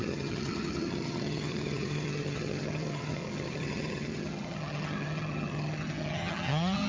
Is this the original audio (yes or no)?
no